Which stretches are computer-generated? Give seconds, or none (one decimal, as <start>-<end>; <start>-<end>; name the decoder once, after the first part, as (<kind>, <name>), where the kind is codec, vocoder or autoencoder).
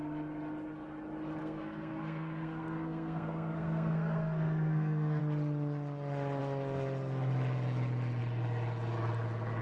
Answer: 1.4-5.2 (codec, SNAC)